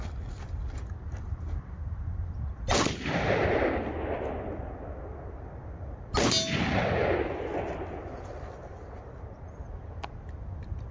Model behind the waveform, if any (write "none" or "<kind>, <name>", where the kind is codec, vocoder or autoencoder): none